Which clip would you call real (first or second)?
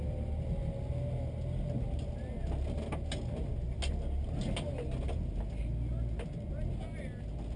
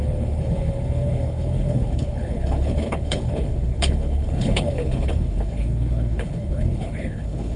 first